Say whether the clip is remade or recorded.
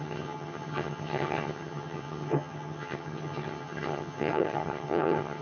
remade